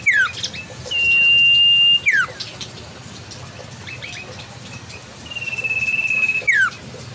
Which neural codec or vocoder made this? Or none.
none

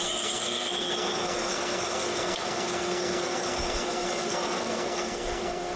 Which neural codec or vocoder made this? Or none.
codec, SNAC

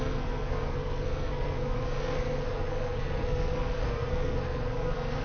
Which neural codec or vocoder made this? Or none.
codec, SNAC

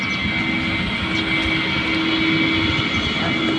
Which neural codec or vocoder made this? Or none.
none